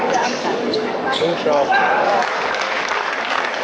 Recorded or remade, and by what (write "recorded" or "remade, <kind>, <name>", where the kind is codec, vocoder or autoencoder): remade, codec, DAC